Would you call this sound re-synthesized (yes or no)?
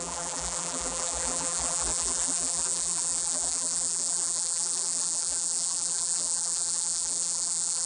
yes